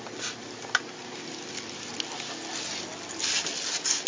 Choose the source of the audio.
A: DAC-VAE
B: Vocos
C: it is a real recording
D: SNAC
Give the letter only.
C